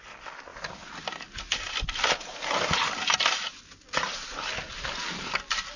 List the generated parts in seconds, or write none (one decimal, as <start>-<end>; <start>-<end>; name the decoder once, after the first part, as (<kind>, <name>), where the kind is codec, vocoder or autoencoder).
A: none